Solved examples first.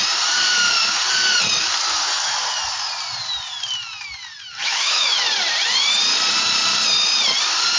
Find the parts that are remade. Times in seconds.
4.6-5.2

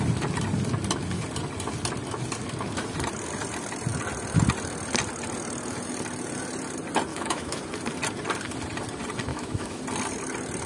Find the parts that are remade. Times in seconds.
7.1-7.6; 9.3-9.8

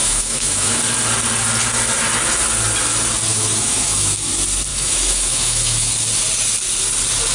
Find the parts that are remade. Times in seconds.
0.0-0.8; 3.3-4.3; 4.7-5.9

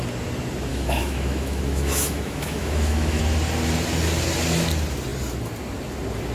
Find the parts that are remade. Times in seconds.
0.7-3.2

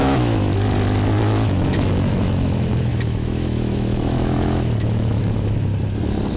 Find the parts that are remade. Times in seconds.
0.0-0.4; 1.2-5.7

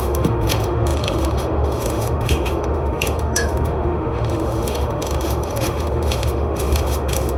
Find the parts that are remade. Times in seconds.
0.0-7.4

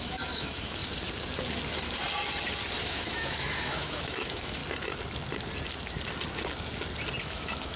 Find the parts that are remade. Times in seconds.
0.0-0.8; 2.8-4.6; 7.2-7.8